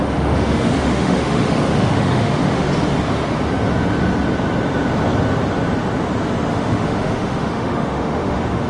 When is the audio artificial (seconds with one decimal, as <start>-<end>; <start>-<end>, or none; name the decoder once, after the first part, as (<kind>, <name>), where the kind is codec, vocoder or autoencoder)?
0.0-2.7 (autoencoder, DAC-VAE); 6.5-8.7